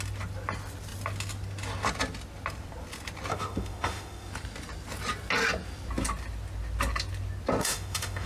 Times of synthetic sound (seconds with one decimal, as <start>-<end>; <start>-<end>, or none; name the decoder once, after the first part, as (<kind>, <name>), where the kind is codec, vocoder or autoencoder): 3.3-4.3 (autoencoder, DAC-VAE); 7.6-8.3